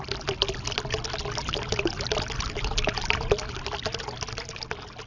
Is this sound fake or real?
real